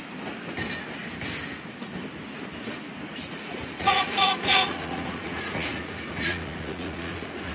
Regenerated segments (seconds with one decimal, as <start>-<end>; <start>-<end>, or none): 3.1-7.5